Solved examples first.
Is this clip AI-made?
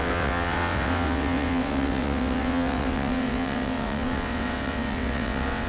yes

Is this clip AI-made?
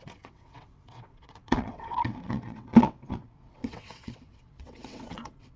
yes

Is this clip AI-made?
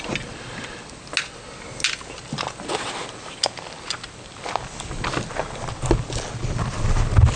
no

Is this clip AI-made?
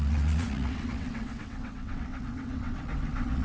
yes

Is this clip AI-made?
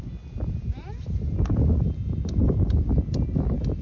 no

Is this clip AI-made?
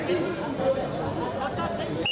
no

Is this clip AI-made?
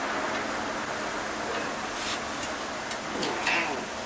no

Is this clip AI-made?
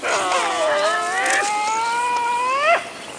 no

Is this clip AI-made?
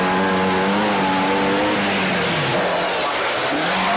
no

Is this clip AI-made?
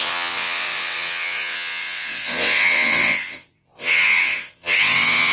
yes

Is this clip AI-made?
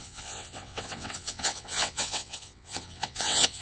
yes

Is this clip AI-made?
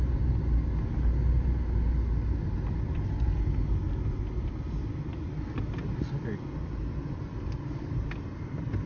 no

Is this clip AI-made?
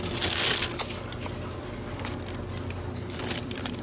no